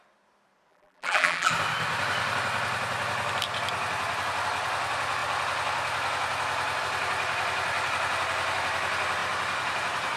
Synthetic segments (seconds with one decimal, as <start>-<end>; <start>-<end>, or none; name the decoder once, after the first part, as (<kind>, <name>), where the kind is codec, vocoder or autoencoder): 0.7-1.5 (vocoder, BigVGAN v2)